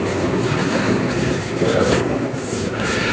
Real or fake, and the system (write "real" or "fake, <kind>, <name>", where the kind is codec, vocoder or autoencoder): fake, codec, SNAC